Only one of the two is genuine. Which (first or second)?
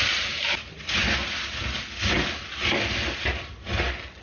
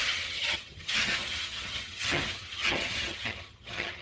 first